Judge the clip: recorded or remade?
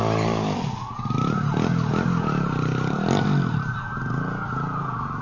recorded